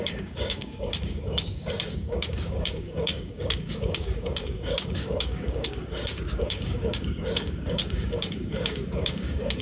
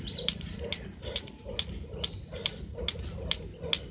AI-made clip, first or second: first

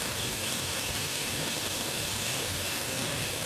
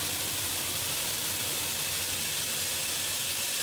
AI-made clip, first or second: first